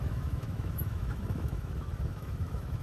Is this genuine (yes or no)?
no